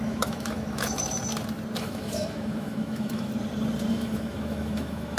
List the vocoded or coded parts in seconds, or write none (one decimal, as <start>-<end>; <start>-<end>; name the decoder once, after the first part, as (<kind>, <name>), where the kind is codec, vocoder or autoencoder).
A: 0.0-1.2 (autoencoder, DAC-VAE); 1.8-3.3; 3.9-5.2